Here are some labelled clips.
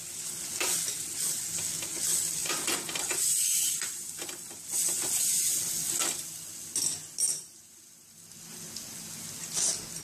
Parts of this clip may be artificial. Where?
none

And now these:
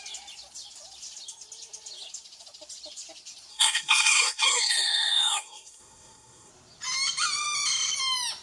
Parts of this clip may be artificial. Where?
3.5-6.5 (codec, SNAC)

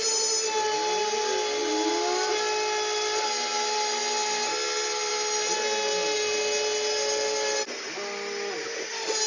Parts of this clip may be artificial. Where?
none

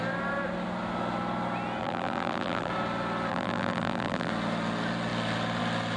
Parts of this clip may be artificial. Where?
1.8-2.7 (vocoder, BigVGAN v2); 3.3-4.3